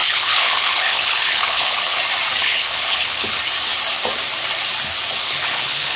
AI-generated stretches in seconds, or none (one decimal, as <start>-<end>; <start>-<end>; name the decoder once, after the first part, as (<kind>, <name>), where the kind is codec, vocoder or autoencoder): 0.0-2.0 (codec, HILCodec); 2.4-3.4; 5.2-6.0